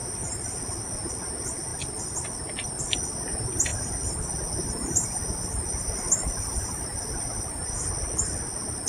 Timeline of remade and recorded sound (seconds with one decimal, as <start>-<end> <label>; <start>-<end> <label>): 0.0-1.1 remade; 1.1-1.7 recorded; 1.7-2.8 remade; 2.8-3.7 recorded; 3.7-7.9 remade; 7.9-8.9 recorded

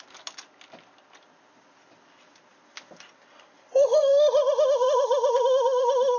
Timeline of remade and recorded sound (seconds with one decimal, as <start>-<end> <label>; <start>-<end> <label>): 0.0-2.5 recorded; 2.5-6.2 remade

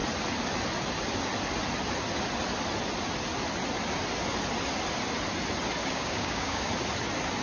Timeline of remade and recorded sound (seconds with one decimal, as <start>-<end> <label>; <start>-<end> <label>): 0.0-5.8 recorded; 5.8-6.7 remade; 6.7-7.4 recorded